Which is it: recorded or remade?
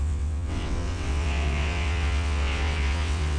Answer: remade